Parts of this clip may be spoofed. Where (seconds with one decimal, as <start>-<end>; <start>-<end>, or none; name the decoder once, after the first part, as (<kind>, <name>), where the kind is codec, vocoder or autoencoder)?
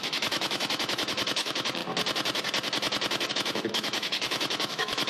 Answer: 0.0-1.8 (autoencoder, DAC-VAE); 3.3-5.1